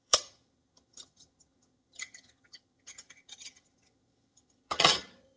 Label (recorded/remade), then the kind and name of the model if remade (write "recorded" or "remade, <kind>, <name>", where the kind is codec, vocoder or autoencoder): remade, vocoder, HiFi-GAN